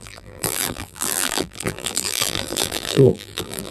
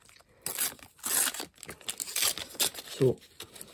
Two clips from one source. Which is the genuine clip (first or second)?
second